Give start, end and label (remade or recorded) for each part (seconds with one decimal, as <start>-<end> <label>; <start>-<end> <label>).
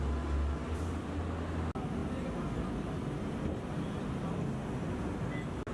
0.0-5.7 recorded